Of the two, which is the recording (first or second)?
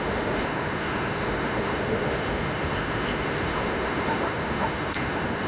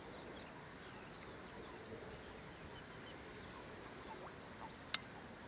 second